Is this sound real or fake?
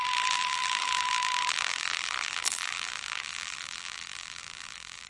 fake